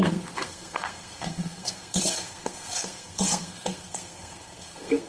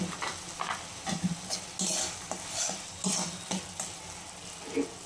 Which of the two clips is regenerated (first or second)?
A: first